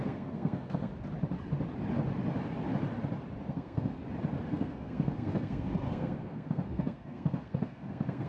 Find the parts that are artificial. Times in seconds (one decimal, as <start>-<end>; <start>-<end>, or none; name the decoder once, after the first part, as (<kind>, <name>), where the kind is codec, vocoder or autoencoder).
0.0-0.9 (codec, SNAC); 3.5-3.9; 4.5-8.3

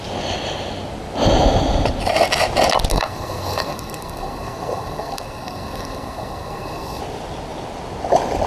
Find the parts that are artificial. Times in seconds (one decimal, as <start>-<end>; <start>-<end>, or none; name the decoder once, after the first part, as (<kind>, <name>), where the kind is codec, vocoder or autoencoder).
2.9-7.0 (codec, SNAC)

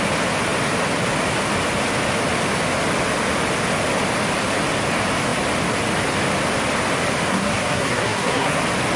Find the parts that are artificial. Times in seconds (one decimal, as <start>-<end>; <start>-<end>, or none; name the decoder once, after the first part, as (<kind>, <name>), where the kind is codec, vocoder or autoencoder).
7.3-8.6 (codec, SNAC)